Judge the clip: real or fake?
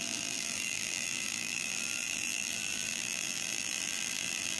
fake